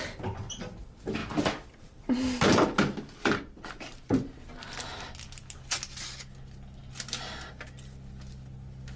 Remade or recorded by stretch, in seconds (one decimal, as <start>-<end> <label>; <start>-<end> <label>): 0.0-9.0 recorded